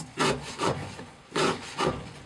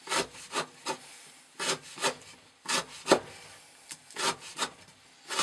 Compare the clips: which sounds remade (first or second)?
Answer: first